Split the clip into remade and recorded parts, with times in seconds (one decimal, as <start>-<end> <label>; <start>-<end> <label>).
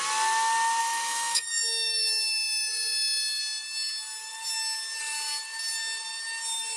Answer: 0.0-0.8 recorded; 0.8-3.4 remade; 3.4-6.8 recorded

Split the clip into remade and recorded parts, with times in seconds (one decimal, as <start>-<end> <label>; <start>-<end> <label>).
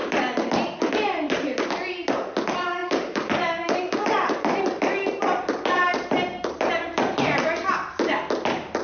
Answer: 0.0-2.8 recorded; 2.8-7.2 remade; 7.2-8.8 recorded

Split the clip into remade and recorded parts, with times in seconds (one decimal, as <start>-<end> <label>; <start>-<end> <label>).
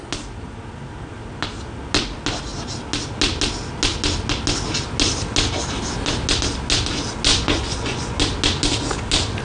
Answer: 0.0-7.3 recorded; 7.3-8.2 remade; 8.2-9.4 recorded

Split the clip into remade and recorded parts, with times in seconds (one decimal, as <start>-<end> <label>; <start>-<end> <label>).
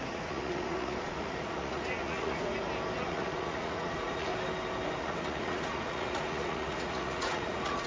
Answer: 0.0-2.4 remade; 2.4-3.0 recorded; 3.0-4.3 remade; 4.3-5.0 recorded; 5.0-7.9 remade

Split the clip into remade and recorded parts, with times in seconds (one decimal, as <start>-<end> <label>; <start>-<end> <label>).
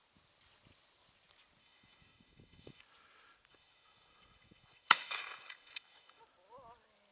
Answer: 0.0-1.6 recorded; 1.6-2.8 remade; 2.8-3.5 recorded; 3.5-6.2 remade; 6.2-7.1 recorded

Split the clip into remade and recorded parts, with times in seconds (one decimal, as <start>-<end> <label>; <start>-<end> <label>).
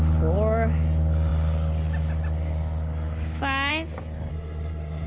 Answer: 0.0-4.3 recorded; 4.3-5.1 remade